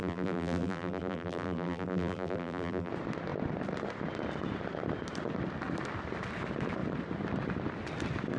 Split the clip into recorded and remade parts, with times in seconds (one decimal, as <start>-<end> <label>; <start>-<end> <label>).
0.0-2.9 remade; 2.9-8.4 recorded